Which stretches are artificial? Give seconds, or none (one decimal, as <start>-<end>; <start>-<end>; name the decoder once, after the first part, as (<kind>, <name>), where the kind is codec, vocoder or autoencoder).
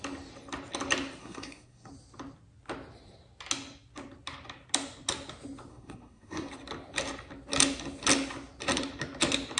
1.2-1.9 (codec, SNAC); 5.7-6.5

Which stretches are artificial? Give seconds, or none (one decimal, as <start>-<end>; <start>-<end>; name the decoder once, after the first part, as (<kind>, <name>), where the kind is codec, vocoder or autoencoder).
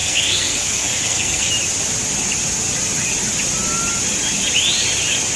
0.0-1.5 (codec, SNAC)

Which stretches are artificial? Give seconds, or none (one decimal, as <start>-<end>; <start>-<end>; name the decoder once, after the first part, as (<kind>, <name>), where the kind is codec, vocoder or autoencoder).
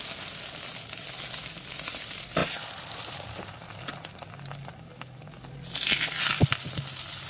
none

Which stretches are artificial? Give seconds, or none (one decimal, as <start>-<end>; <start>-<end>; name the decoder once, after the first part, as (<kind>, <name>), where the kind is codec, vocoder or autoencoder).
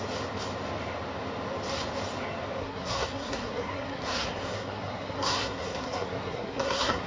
2.6-7.1 (codec, SNAC)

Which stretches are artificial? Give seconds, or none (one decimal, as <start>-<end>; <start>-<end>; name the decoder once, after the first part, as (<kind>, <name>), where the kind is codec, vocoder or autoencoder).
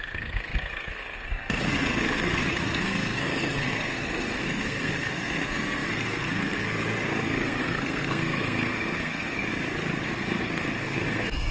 0.0-9.5 (codec, SNAC); 10.0-11.5